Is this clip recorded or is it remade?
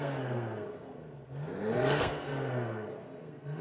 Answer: remade